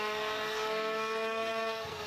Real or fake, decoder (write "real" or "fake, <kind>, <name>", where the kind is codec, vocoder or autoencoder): fake, codec, SNAC